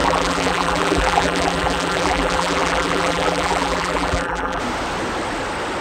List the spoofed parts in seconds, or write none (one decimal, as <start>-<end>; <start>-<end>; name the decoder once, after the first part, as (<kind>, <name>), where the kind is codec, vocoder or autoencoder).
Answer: 0.0-4.6 (vocoder, BigVGAN v2)